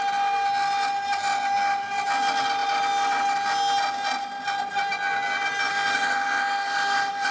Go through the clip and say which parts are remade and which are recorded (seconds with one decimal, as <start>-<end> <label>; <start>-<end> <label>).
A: 0.0-5.7 recorded; 5.7-7.3 remade